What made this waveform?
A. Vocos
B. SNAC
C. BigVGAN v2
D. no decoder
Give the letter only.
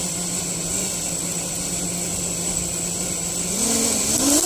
D